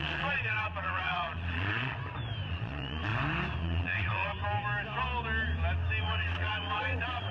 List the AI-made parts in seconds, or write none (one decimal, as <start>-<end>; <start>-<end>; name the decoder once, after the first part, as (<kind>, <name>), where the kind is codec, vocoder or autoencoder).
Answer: 0.0-2.0 (vocoder, Vocos); 2.5-3.1; 3.6-4.3; 6.0-7.3